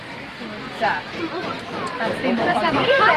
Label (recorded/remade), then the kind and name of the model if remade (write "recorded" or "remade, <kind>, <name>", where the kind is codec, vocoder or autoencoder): recorded